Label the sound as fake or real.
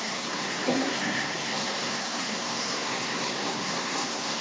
fake